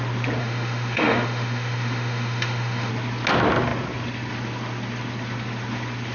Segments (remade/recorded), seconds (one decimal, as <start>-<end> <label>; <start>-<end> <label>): 0.0-0.4 recorded; 0.4-2.9 remade; 2.9-6.1 recorded